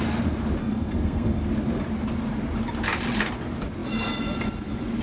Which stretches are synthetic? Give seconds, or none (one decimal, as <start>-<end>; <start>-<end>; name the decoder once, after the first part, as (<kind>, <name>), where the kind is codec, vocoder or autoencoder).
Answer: 0.6-1.4 (codec, SNAC)